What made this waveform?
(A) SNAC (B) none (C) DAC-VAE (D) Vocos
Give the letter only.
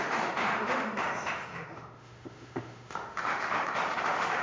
C